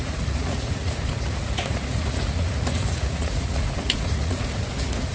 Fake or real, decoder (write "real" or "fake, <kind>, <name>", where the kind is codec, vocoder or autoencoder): fake, vocoder, Vocos